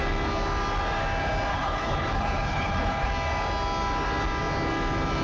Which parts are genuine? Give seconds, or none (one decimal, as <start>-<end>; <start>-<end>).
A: 0.0-1.5; 3.1-5.2

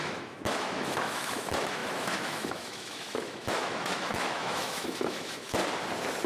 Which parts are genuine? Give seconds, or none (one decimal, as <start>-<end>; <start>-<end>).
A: 5.6-6.3

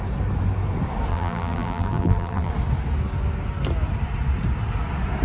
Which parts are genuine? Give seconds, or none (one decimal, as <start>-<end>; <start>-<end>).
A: 0.0-1.1; 2.5-5.2

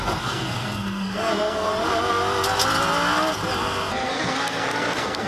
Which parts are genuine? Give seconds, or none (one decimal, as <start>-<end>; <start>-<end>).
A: 1.7-3.9

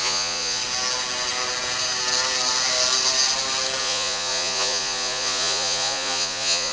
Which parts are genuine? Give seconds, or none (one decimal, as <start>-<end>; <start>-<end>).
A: 0.6-3.8

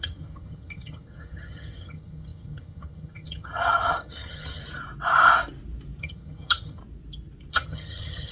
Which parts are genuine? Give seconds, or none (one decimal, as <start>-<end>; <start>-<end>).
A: 4.6-6.0; 6.8-7.5

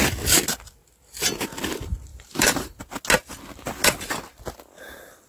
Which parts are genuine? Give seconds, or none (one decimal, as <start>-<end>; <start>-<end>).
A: 0.0-2.1; 2.8-5.3

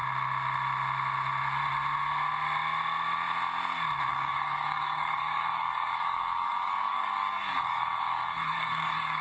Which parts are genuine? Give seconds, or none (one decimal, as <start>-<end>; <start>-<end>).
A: 0.0-4.1